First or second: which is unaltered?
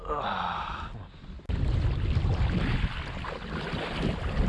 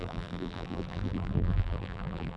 first